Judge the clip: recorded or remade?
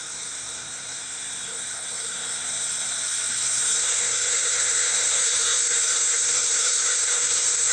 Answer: remade